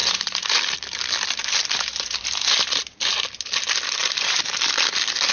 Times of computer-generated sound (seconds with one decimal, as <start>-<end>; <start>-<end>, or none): 0.0-0.7; 1.4-3.4; 4.0-4.7

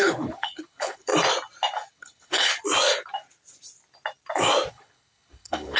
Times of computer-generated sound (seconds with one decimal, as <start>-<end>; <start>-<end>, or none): 0.0-1.1; 1.9-2.5; 4.7-5.8